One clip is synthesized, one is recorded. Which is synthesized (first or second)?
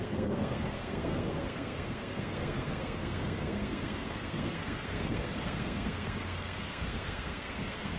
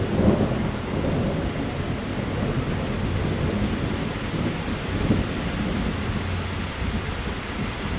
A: first